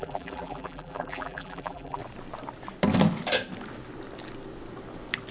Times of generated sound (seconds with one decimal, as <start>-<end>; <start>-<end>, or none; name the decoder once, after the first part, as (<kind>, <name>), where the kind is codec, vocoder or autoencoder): 0.0-2.0 (vocoder, BigVGAN v2)

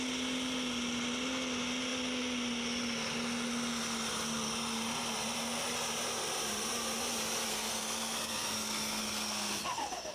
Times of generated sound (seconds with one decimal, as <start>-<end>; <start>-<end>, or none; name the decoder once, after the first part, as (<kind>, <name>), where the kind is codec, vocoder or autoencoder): 7.5-9.5 (codec, SNAC)

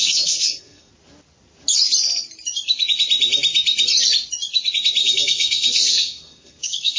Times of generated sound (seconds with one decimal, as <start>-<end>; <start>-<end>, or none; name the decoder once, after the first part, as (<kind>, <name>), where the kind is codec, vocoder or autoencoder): 0.0-0.9 (codec, SNAC); 5.0-7.0

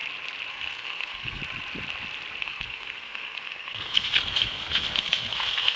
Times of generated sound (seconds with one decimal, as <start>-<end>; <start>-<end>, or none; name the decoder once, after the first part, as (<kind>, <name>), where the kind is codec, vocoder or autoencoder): 0.5-1.4 (codec, SNAC); 2.4-5.8

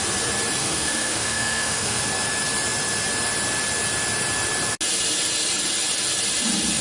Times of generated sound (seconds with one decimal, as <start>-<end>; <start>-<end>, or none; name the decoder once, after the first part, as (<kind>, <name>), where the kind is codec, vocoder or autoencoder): 0.6-2.0 (autoencoder, DAC-VAE)

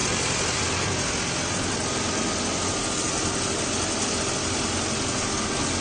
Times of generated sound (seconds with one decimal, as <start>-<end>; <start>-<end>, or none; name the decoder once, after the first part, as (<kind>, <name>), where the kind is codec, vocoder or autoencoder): 0.0-0.6 (vocoder, BigVGAN v2)